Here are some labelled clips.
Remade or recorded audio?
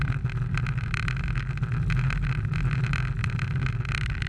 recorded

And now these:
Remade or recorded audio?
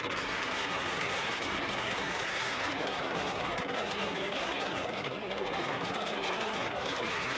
remade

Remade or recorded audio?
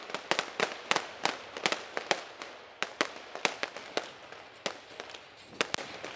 recorded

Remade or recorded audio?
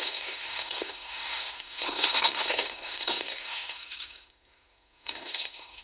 remade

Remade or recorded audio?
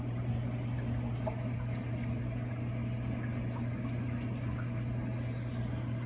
recorded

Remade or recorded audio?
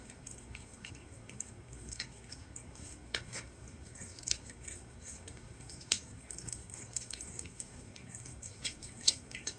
remade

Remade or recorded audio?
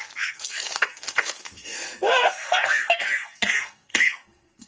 remade